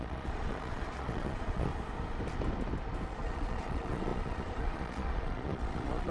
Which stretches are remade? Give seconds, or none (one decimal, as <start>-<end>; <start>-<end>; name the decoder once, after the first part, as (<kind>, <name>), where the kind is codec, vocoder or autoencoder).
0.0-1.7 (vocoder, Vocos); 3.1-6.1